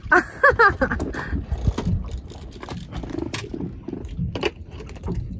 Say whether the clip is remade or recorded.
recorded